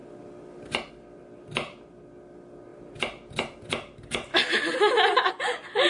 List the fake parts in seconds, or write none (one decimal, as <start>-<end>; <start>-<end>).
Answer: none